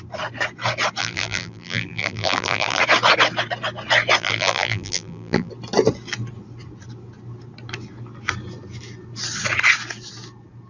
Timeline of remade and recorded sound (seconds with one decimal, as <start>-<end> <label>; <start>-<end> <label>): 0.0-1.0 recorded; 1.0-2.8 remade; 2.8-4.2 recorded; 4.2-5.5 remade; 5.5-10.7 recorded